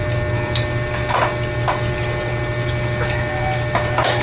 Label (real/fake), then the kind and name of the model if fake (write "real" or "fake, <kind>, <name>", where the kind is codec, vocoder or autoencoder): real